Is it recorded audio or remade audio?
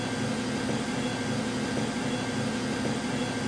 recorded